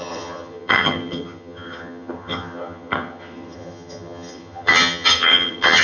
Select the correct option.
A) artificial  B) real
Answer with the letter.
A